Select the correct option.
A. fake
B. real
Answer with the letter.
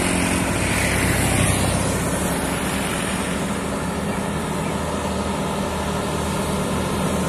B